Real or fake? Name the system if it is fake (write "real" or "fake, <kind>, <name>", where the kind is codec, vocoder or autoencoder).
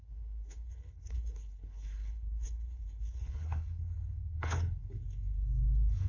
fake, codec, HILCodec